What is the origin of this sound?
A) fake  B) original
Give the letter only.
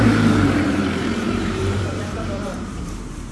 A